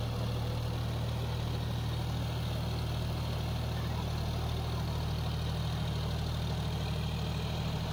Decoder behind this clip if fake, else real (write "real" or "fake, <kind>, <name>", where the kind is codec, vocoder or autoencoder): real